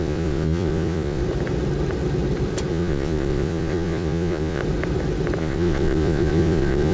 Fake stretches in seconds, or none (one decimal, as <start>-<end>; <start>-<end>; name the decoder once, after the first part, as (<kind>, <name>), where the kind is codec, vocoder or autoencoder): 0.0-1.2 (vocoder, Vocos); 2.7-4.6; 5.4-6.9